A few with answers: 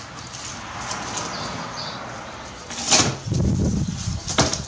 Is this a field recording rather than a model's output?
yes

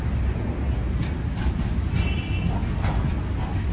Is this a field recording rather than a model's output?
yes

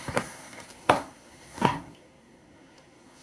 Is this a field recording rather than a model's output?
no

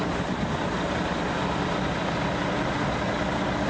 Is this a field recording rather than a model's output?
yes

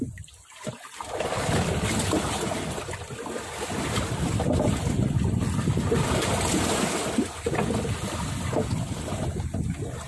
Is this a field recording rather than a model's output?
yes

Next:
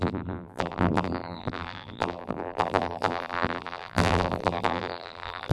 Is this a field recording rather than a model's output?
no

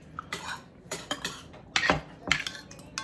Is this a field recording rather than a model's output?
yes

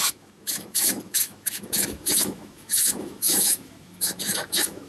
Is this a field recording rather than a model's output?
no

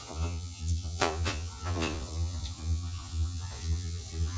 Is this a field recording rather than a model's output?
no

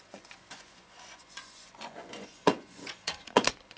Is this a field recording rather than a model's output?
no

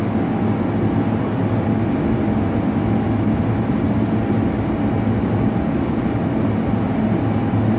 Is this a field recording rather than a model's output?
yes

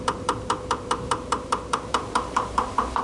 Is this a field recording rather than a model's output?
no